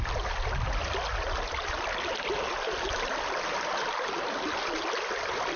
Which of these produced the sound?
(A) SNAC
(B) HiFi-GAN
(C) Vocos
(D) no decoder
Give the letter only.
D